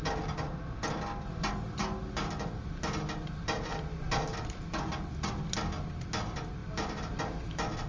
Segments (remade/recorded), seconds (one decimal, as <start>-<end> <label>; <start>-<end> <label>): 0.0-7.9 recorded